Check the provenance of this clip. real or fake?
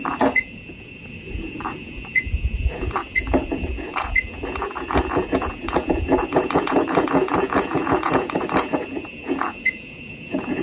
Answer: fake